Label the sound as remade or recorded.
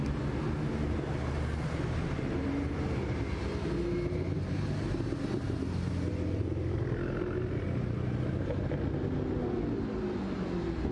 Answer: recorded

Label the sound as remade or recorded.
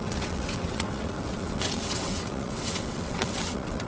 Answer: remade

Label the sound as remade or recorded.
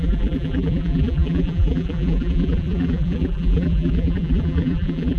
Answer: remade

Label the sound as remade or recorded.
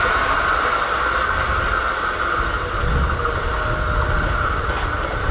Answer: recorded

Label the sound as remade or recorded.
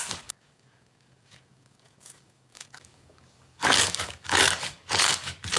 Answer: remade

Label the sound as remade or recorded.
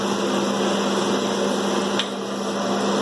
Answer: recorded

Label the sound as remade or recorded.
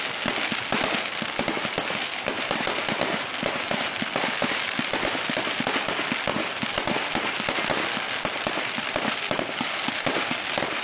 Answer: recorded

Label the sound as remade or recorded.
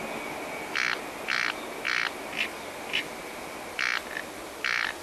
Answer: recorded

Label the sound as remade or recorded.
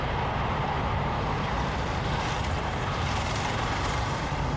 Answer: remade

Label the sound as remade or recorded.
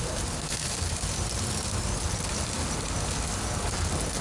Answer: recorded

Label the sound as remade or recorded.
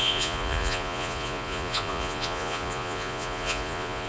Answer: remade